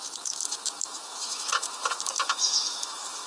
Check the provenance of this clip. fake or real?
fake